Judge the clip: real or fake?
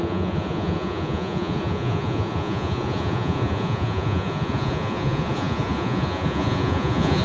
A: fake